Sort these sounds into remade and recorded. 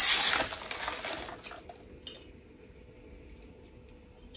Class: recorded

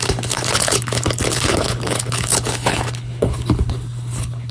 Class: remade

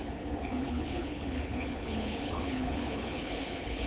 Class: remade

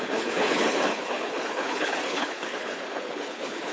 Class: remade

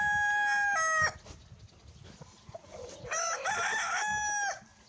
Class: recorded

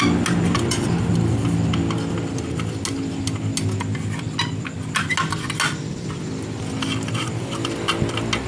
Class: recorded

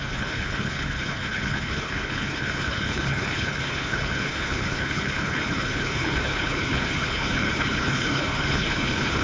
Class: remade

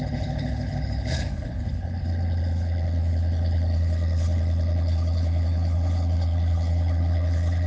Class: remade